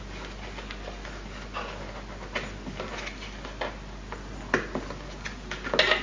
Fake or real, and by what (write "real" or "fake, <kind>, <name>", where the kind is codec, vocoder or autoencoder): real